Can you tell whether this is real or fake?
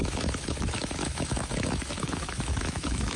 fake